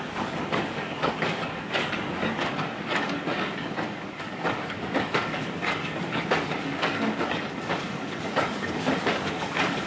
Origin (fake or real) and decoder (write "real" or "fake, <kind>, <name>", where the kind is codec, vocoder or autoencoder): fake, codec, DAC